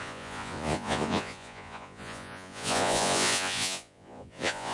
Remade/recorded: remade